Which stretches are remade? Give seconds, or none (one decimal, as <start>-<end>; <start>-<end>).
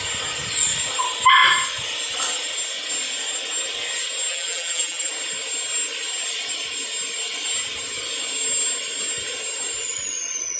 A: 4.3-5.1